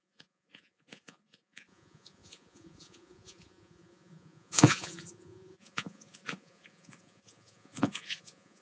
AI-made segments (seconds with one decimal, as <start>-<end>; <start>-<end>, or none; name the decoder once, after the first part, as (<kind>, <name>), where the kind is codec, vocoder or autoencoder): 0.0-8.6 (vocoder, Vocos)